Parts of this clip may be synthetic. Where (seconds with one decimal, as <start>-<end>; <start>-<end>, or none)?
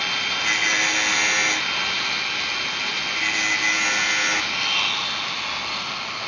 none